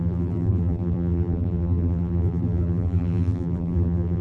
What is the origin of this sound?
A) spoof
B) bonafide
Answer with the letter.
A